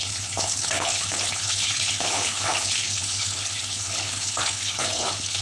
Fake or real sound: fake